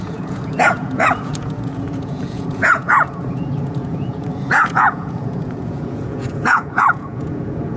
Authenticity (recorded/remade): remade